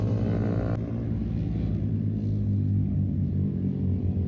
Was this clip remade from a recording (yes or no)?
no